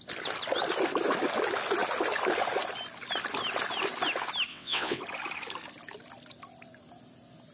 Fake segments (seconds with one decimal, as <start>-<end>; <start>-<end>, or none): 4.5-5.0